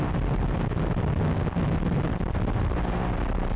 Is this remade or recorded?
recorded